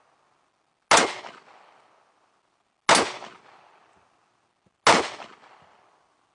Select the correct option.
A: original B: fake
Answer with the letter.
A